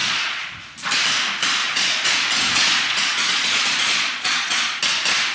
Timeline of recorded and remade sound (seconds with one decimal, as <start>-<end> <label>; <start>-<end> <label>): 0.0-0.6 remade; 0.6-1.6 recorded; 1.6-4.8 remade; 4.8-5.3 recorded